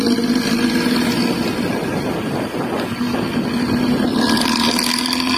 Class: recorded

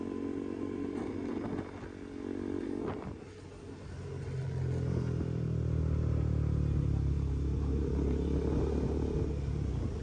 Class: recorded